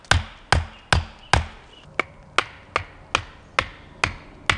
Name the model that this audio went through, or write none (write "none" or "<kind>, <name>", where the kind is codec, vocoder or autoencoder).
none